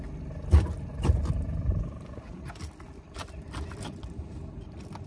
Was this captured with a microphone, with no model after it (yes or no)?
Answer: yes